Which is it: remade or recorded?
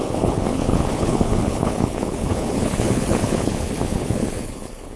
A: remade